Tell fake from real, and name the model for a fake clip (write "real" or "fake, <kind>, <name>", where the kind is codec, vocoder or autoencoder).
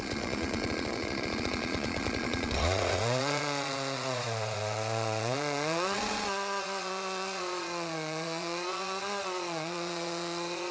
fake, vocoder, Vocos